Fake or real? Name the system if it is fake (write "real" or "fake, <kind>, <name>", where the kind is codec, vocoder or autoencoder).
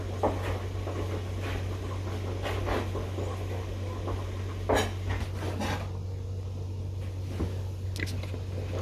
real